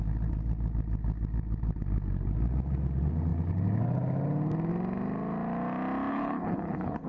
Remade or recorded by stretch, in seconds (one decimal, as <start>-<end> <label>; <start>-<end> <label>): 0.0-6.1 recorded; 6.1-7.1 remade